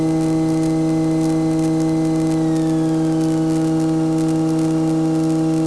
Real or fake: real